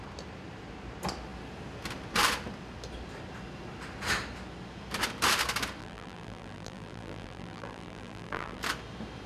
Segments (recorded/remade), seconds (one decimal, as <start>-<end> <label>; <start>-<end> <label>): 0.0-5.8 recorded; 5.8-8.6 remade; 8.6-9.3 recorded